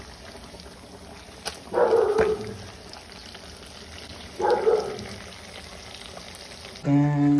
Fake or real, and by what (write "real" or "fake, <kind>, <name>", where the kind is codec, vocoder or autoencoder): real